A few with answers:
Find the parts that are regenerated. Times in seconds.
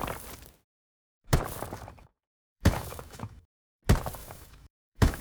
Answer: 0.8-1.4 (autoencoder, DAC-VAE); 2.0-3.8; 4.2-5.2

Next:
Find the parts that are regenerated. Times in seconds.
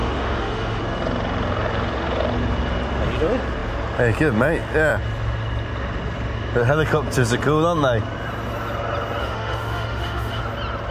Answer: 0.0-0.8 (autoencoder, DAC-VAE); 9.2-10.4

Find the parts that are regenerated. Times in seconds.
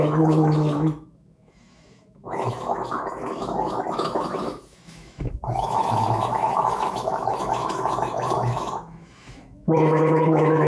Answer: 0.0-10.7 (autoencoder, DAC-VAE)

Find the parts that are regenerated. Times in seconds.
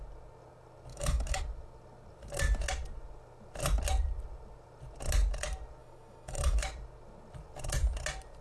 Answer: 0.9-1.4 (autoencoder, DAC-VAE); 5.8-6.6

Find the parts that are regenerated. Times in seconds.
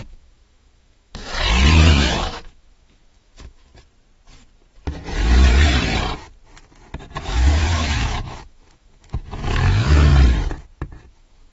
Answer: 0.0-1.3 (autoencoder, DAC-VAE); 1.9-3.7; 7.2-10.1; 11.1-11.5